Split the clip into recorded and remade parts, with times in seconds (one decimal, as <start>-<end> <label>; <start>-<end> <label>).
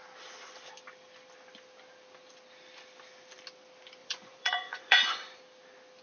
0.0-4.0 recorded; 4.0-5.4 remade; 5.4-6.0 recorded